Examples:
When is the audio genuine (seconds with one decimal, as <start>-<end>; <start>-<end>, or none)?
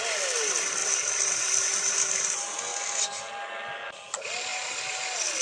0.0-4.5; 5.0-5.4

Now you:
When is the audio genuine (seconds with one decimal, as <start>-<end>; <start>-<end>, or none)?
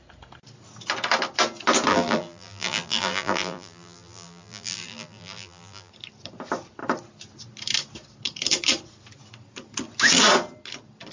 0.0-1.9; 5.9-11.1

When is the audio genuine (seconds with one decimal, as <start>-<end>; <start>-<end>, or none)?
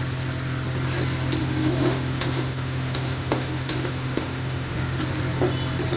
0.0-1.4; 5.0-6.0